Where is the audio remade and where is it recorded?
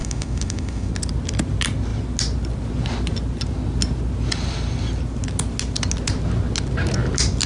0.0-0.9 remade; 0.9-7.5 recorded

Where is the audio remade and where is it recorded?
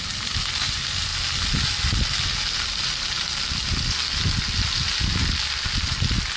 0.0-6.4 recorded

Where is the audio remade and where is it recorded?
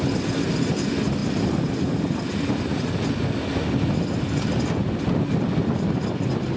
0.0-1.2 recorded; 1.2-2.6 remade; 2.6-6.6 recorded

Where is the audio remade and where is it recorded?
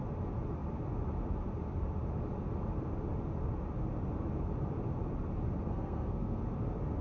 0.0-5.6 recorded; 5.6-6.4 remade; 6.4-7.0 recorded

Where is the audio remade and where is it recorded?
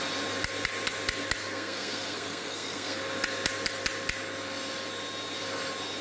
0.0-1.4 recorded; 1.4-3.0 remade; 3.0-6.0 recorded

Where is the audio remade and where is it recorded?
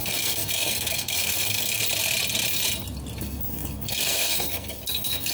0.0-1.8 remade; 1.8-3.2 recorded; 3.2-5.3 remade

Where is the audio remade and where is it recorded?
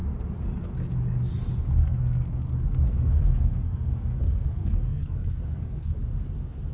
0.0-1.8 recorded; 1.8-2.5 remade; 2.5-2.9 recorded; 2.9-6.0 remade; 6.0-6.7 recorded